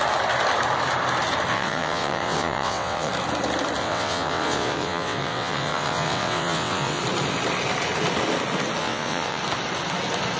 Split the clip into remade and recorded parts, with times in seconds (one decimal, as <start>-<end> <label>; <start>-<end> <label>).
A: 0.0-1.5 recorded; 1.5-3.1 remade; 3.1-3.8 recorded; 3.8-7.0 remade; 7.0-8.8 recorded; 8.8-9.4 remade; 9.4-10.4 recorded